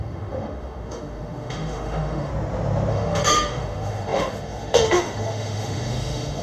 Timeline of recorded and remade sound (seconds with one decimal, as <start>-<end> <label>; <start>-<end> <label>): 0.0-2.3 remade; 2.3-2.9 recorded; 2.9-6.4 remade